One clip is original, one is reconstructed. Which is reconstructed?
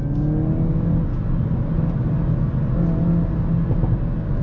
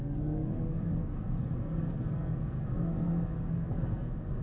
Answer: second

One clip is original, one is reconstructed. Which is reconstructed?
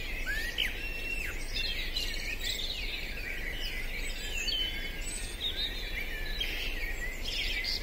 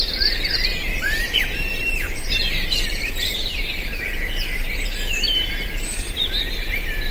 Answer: second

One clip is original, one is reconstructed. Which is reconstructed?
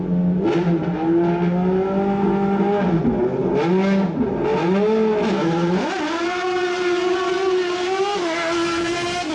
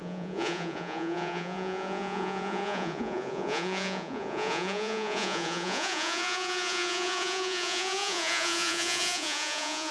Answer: second